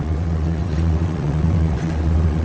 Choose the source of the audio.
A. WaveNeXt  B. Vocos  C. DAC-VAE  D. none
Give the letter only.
A